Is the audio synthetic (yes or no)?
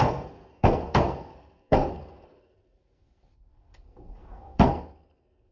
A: yes